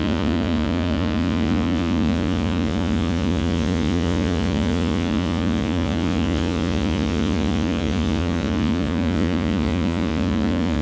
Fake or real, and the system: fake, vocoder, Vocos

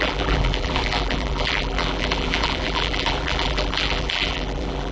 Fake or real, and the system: fake, vocoder, BigVGAN v2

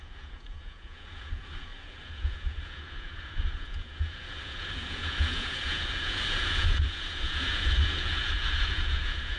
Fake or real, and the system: fake, vocoder, Vocos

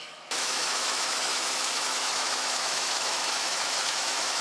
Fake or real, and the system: fake, autoencoder, DAC-VAE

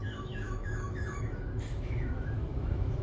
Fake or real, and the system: fake, autoencoder, DAC-VAE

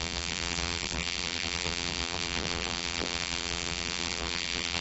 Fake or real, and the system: fake, vocoder, BigVGAN v2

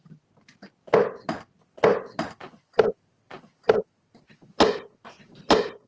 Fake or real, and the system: real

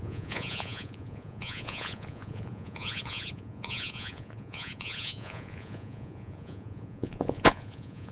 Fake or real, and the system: fake, vocoder, Vocos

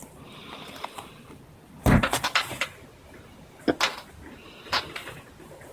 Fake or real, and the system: real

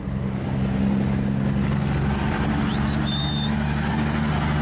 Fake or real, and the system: real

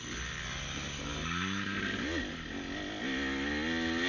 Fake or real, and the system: real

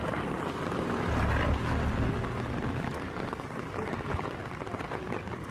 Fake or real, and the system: real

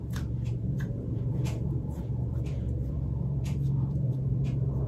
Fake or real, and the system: fake, vocoder, Vocos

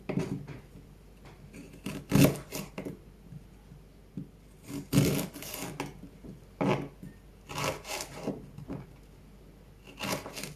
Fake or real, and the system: real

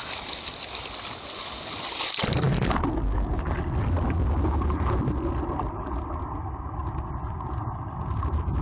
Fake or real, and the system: real